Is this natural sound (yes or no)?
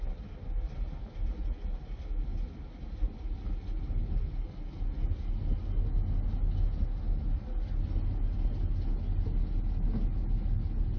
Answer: yes